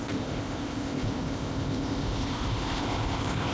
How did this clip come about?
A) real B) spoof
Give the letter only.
B